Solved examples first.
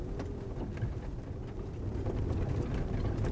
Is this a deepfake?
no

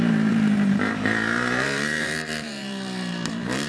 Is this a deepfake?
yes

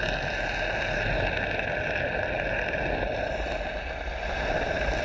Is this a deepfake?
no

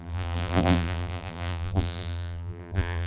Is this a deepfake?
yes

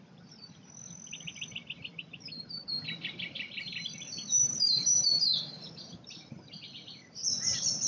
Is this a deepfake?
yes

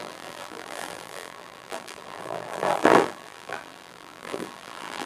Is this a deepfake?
yes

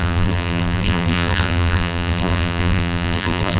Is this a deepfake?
yes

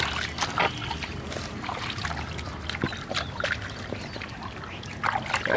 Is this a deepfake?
no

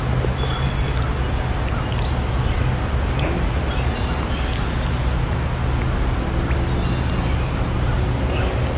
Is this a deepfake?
no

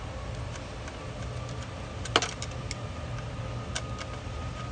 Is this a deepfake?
no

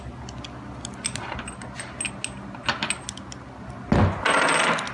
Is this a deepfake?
no